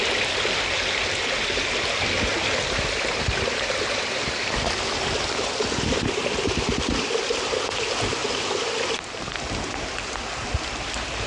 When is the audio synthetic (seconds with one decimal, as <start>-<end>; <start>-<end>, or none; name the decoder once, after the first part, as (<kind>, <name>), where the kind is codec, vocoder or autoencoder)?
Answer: 0.0-11.3 (vocoder, BigVGAN v2)